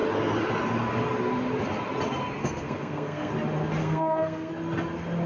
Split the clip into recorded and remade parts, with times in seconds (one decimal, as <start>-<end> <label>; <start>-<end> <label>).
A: 0.0-2.4 recorded; 2.4-3.3 remade; 3.3-3.8 recorded; 3.8-4.5 remade; 4.5-5.3 recorded